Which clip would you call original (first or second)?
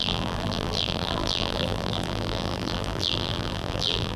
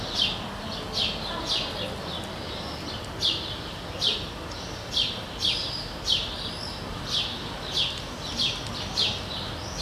second